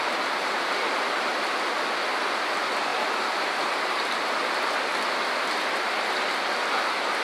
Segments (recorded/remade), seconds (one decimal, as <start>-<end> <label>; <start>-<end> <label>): 0.0-1.3 remade; 1.3-2.9 recorded; 2.9-4.1 remade; 4.1-7.2 recorded